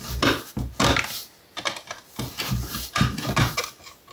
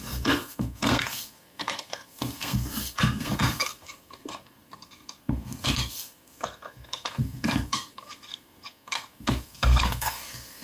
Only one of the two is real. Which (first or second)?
first